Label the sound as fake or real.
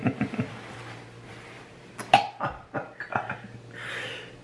real